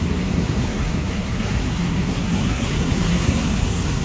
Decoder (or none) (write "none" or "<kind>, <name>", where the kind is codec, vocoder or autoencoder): codec, SNAC